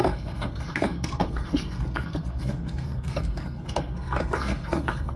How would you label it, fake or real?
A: fake